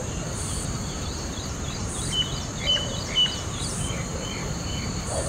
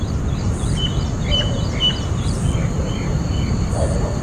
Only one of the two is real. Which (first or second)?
second